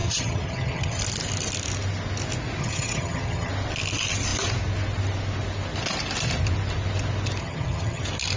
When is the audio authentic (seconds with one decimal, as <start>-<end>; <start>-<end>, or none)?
1.0-2.6; 3.5-7.4; 8.0-8.4